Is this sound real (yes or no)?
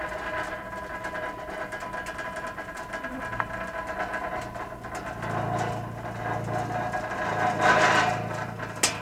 yes